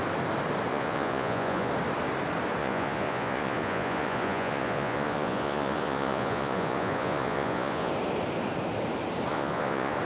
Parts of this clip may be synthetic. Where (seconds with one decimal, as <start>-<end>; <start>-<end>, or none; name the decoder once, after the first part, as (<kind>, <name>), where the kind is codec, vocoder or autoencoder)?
0.7-1.7 (vocoder, Vocos); 2.6-7.9; 9.3-10.0